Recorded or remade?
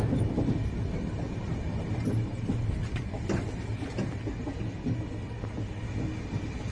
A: recorded